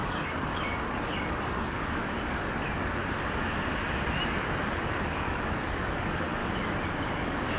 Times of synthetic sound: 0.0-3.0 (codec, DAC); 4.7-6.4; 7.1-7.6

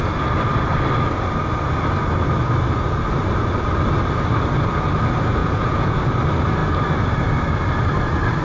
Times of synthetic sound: 5.4-6.0 (vocoder, Vocos)